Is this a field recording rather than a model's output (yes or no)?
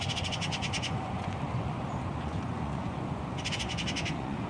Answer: no